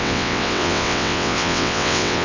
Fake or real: fake